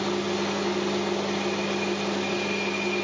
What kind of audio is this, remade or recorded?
recorded